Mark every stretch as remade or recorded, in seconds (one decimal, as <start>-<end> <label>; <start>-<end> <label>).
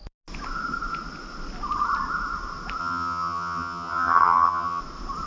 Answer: 0.0-2.8 recorded; 2.8-4.8 remade; 4.8-5.3 recorded